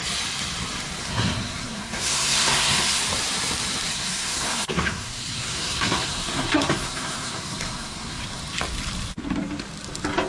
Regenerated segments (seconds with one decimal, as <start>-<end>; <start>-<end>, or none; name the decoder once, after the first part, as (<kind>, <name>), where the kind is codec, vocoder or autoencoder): 1.0-3.0 (codec, SNAC); 3.9-8.2

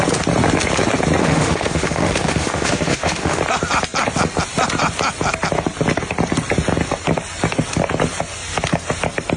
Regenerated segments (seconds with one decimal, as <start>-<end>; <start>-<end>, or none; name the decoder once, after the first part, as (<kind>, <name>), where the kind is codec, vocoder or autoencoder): 1.2-3.4 (autoencoder, DAC-VAE)

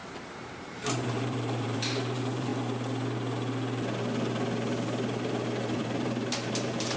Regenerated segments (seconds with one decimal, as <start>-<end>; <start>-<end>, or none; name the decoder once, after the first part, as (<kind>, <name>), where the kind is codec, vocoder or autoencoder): 0.0-2.5 (vocoder, BigVGAN v2); 5.6-7.0

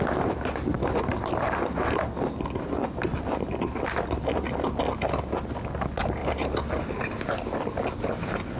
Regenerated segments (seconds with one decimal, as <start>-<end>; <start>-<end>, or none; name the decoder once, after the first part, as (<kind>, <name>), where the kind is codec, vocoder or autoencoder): 6.2-6.8 (vocoder, BigVGAN v2)

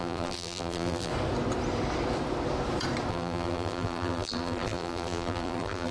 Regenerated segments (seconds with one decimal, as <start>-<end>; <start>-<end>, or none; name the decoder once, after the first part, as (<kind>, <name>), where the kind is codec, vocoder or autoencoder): 0.0-1.1 (vocoder, BigVGAN v2); 3.1-5.9

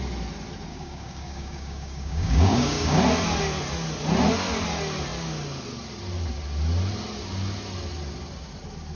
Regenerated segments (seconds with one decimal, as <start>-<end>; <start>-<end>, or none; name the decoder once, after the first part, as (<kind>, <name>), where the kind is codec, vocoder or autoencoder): 0.7-3.0 (codec, DAC)